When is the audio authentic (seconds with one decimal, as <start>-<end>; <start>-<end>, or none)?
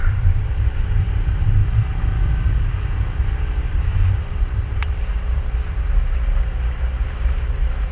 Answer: 1.6-3.2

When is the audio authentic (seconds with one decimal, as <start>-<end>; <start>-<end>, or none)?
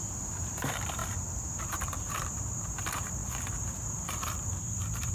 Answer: 1.0-1.7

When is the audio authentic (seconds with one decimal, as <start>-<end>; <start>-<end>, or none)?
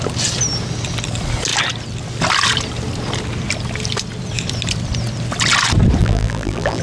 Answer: 0.0-6.0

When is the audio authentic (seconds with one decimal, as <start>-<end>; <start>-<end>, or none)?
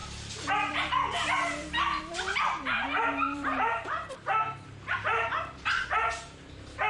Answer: 4.1-6.9